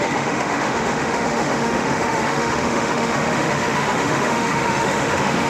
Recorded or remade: remade